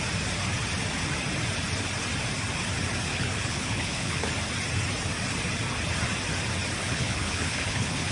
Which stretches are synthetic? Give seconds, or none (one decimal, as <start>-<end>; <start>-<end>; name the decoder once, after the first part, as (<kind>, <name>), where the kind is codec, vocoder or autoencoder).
3.1-4.3 (codec, HILCodec); 6.8-8.1